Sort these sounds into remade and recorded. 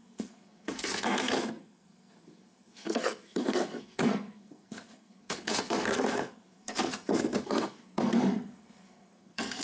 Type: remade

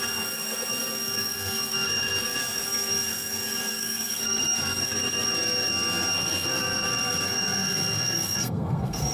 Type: remade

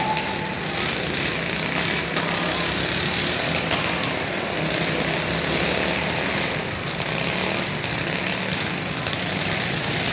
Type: recorded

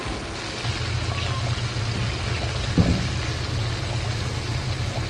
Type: recorded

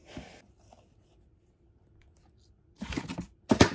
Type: recorded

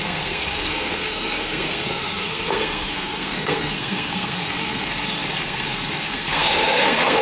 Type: remade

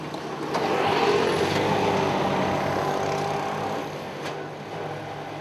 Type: recorded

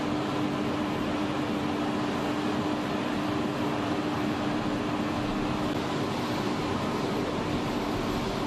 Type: recorded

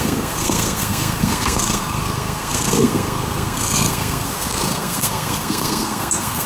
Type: remade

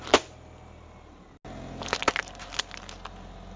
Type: recorded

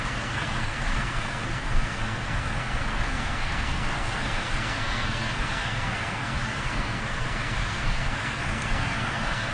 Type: remade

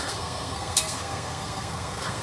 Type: remade